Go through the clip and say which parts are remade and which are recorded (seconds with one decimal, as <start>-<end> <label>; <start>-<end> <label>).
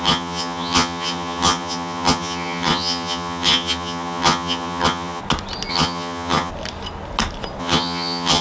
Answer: 0.0-5.2 remade; 5.2-5.7 recorded; 5.7-6.5 remade; 6.5-7.6 recorded; 7.6-8.4 remade